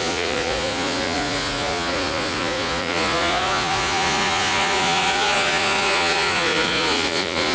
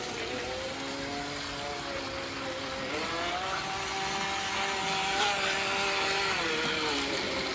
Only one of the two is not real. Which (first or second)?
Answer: first